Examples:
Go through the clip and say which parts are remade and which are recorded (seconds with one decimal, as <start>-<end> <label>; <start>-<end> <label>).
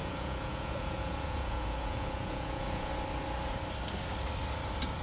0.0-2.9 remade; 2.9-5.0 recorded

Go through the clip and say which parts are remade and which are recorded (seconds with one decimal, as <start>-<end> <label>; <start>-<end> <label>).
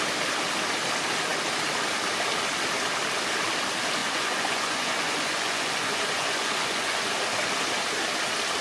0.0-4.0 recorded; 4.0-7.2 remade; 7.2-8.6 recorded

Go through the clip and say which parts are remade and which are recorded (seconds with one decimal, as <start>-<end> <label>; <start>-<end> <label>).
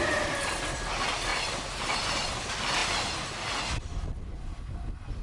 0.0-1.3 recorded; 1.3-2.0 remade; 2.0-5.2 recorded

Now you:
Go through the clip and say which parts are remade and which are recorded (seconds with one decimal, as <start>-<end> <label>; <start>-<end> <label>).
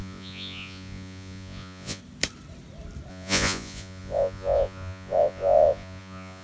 0.0-2.0 remade; 2.0-3.1 recorded; 3.1-6.4 remade